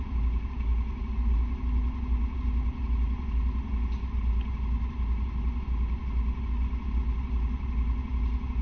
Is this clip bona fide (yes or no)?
yes